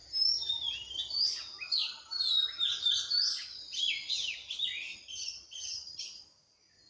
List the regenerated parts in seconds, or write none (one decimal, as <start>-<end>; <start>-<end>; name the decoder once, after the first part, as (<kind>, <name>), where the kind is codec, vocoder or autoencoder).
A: 4.9-6.0 (vocoder, HiFi-GAN)